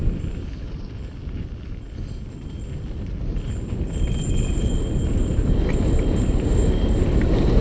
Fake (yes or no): no